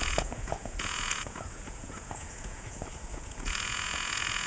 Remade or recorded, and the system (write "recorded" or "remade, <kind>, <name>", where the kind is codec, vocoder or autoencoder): remade, vocoder, Vocos